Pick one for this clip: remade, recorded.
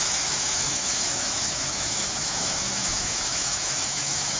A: remade